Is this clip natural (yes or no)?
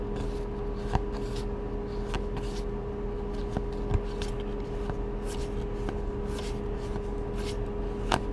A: yes